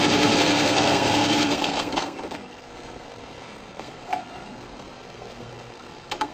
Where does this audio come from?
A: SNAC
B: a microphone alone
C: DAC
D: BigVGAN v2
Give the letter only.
A